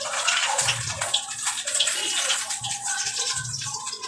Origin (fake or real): fake